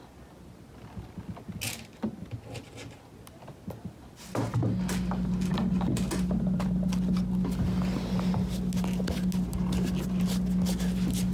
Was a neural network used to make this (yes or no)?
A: no